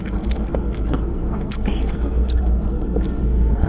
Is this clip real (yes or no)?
no